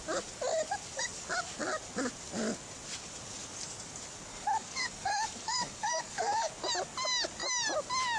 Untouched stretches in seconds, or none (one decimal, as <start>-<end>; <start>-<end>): 0.0-4.3; 6.5-8.2